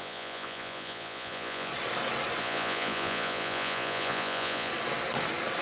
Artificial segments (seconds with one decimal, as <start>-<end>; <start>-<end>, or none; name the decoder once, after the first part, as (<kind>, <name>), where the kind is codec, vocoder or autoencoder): 0.0-1.7 (vocoder, Vocos); 2.4-4.7